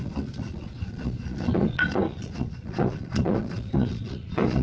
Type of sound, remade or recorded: remade